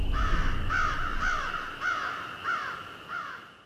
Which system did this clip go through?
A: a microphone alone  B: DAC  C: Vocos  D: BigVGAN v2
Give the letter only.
A